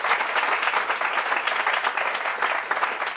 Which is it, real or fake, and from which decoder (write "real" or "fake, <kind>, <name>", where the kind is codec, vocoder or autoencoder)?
real